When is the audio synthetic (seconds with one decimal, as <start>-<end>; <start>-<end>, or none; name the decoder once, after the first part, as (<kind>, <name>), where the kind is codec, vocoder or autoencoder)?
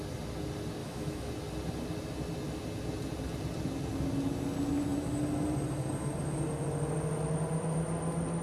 0.8-1.3 (autoencoder, DAC-VAE)